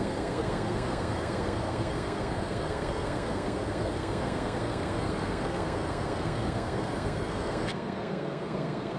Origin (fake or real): fake